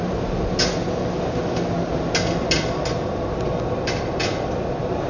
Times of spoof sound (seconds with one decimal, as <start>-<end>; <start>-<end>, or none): none